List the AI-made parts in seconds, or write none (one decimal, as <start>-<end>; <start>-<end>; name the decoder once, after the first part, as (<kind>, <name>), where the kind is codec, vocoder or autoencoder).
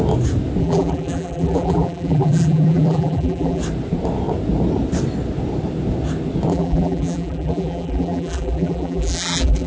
0.6-3.6 (vocoder, BigVGAN v2); 6.5-9.7